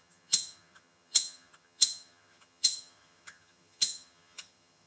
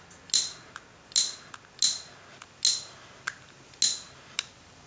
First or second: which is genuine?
second